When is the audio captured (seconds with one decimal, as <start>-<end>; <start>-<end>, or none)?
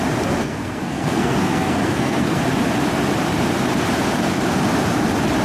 0.0-0.4; 2.4-5.4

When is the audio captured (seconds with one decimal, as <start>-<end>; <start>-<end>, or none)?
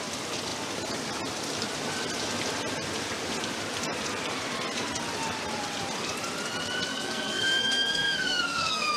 0.0-6.9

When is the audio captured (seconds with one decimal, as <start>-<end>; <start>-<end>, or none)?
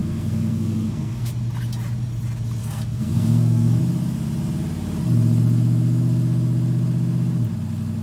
1.3-2.6; 3.8-8.0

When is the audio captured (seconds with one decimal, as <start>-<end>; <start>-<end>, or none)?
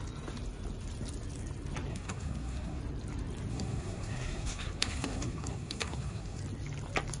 0.0-1.9; 2.8-3.5; 6.4-7.2